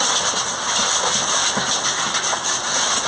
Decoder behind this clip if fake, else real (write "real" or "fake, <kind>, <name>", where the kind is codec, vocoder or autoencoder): real